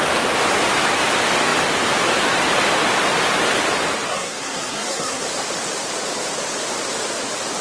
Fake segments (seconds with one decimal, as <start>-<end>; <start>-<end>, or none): 4.1-5.2